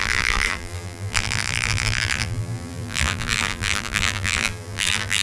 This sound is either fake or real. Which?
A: fake